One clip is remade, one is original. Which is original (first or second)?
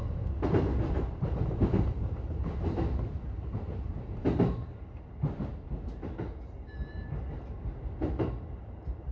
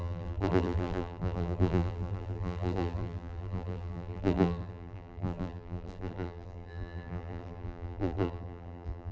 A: first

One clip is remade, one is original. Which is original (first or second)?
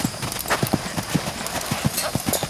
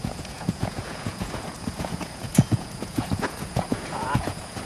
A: first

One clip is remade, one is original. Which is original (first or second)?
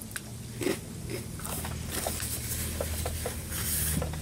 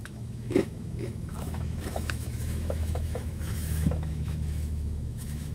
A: first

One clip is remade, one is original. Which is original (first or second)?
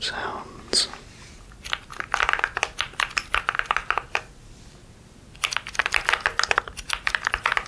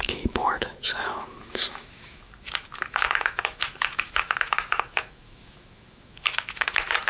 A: first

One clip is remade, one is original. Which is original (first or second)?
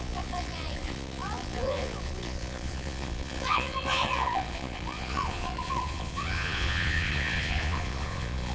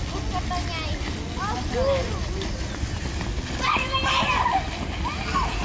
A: second